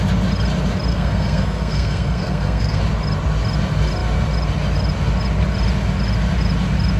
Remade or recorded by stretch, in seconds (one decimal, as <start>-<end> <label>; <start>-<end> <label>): 0.0-0.9 recorded; 0.9-2.8 remade; 2.8-7.0 recorded